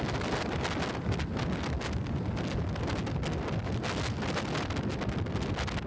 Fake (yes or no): no